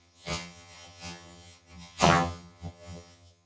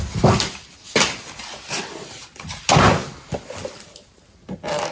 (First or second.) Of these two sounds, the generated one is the first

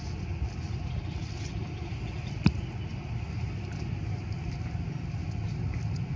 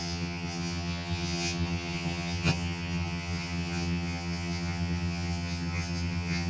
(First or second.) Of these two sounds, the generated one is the second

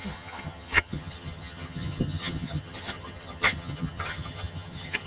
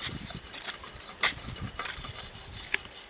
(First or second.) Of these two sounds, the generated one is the first